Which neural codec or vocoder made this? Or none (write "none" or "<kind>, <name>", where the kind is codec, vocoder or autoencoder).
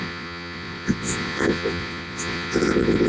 vocoder, Vocos